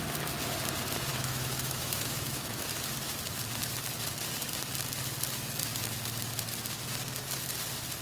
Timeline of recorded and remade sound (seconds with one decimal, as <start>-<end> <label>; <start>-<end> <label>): 0.0-1.1 recorded; 1.1-2.7 remade; 2.7-8.0 recorded